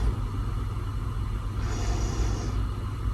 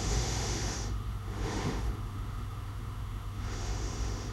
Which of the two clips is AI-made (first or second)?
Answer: second